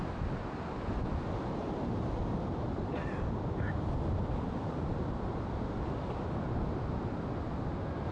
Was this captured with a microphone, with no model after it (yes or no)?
yes